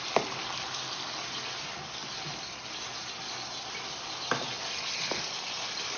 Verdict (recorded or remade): recorded